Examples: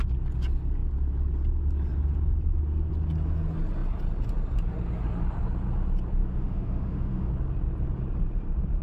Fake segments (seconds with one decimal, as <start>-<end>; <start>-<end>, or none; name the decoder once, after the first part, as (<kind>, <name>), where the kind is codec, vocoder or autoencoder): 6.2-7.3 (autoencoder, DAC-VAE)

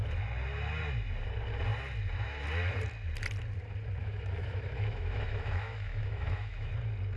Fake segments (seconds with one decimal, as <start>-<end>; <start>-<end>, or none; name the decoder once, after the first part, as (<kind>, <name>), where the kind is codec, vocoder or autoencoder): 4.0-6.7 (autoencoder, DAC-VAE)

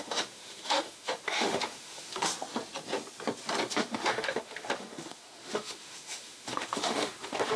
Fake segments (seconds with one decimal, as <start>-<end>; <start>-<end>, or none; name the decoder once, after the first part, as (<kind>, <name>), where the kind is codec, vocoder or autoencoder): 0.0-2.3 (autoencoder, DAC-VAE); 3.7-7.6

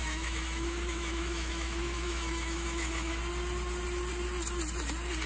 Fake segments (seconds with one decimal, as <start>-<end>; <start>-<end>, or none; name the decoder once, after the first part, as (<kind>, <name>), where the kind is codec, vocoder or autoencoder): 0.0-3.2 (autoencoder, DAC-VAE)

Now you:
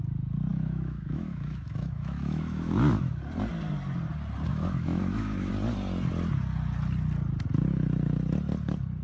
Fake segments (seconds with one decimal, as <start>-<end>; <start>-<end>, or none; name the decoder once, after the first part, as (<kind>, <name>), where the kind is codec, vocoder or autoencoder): 0.5-3.2 (autoencoder, DAC-VAE); 4.5-5.5

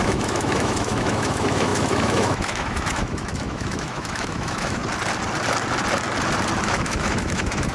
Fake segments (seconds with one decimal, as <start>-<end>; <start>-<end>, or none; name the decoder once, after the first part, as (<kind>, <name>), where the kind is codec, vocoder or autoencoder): 0.0-4.8 (autoencoder, DAC-VAE); 6.6-7.7

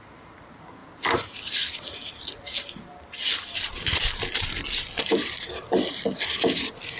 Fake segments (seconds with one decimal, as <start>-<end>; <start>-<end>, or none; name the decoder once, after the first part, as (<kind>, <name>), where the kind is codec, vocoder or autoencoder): none